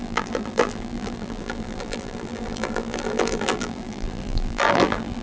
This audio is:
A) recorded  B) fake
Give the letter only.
B